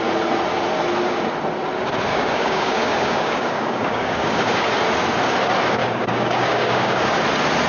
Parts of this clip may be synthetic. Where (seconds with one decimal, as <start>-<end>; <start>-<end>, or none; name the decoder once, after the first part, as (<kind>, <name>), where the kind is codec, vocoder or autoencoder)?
2.1-4.7 (codec, DAC); 5.8-7.1